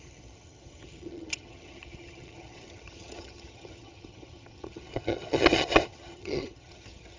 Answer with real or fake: fake